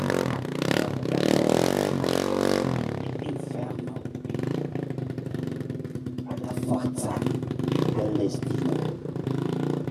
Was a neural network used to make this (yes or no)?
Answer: no